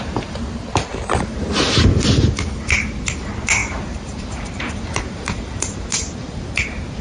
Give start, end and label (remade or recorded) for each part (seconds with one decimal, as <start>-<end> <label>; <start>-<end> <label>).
0.0-0.9 recorded; 0.9-1.5 remade; 1.5-3.6 recorded; 3.6-7.0 remade